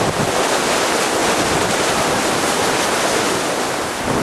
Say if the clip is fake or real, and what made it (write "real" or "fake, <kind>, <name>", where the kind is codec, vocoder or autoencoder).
real